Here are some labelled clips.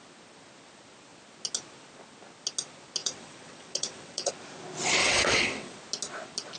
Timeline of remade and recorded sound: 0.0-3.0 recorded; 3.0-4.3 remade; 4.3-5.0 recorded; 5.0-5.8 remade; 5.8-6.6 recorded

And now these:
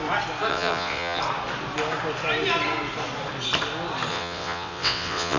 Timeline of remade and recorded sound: 0.0-0.5 recorded; 0.5-1.2 remade; 1.2-4.1 recorded; 4.1-5.4 remade

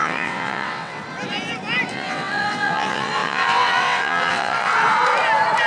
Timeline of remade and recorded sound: 0.0-1.0 remade; 1.0-1.9 recorded; 1.9-4.7 remade; 4.7-5.7 recorded